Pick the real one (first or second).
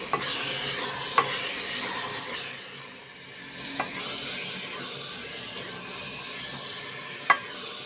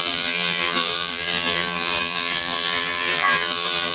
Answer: first